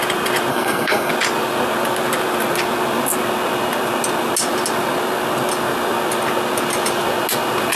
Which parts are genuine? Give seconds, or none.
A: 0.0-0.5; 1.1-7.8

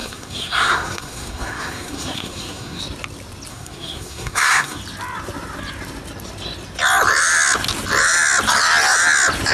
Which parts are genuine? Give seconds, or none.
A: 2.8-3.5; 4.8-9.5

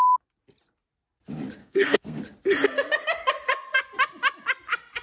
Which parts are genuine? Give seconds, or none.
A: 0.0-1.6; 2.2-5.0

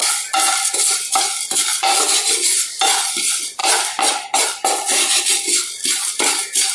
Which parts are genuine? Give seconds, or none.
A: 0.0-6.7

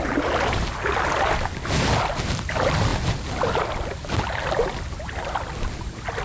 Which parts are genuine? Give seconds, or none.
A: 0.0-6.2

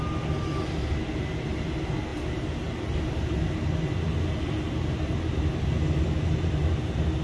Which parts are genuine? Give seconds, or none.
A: 0.0-7.2

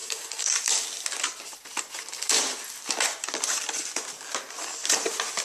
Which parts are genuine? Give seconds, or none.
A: 0.5-5.4

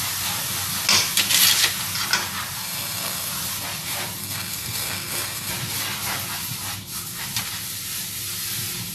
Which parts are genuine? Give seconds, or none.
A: 0.0-2.6; 3.3-4.2; 5.5-8.9